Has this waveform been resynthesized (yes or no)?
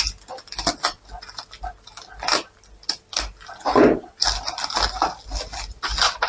no